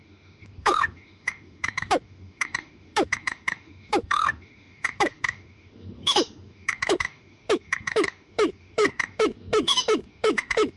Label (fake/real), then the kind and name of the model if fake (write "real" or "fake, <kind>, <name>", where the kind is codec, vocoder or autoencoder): fake, autoencoder, DAC-VAE